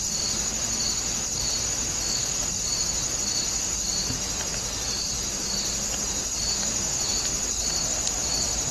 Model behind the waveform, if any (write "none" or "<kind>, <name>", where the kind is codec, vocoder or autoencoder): none